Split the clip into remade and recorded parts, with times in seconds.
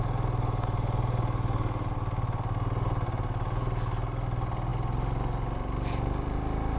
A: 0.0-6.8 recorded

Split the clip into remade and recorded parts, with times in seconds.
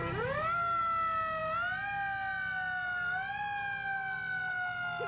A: 0.0-5.1 recorded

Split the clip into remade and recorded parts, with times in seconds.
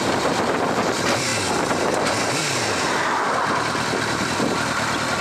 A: 0.0-5.2 recorded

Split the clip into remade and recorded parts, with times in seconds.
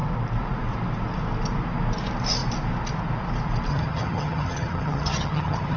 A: 0.0-3.7 recorded; 3.7-5.8 remade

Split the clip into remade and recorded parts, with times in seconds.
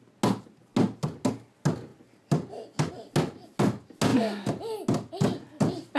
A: 0.0-6.0 recorded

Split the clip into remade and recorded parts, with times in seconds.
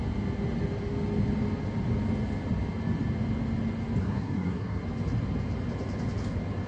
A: 0.0-4.0 recorded; 4.0-4.8 remade; 4.8-6.7 recorded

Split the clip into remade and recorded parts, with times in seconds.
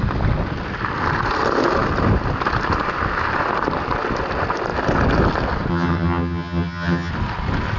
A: 0.0-5.7 recorded; 5.7-7.1 remade; 7.1-7.8 recorded